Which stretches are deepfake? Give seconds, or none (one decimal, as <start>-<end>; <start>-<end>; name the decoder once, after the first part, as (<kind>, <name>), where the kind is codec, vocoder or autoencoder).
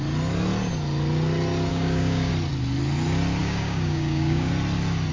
1.7-2.3 (codec, DAC); 3.4-4.5